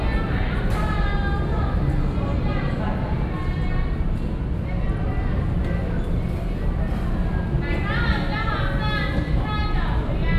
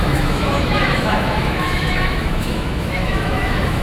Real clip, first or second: first